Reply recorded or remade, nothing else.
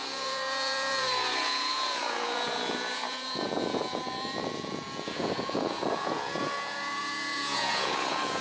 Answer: remade